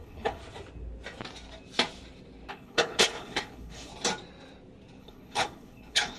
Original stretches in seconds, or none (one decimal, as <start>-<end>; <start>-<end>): 0.4-2.5; 3.9-5.0